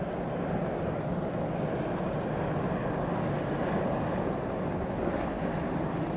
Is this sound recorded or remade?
recorded